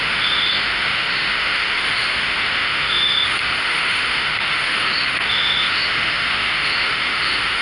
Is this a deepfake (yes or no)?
yes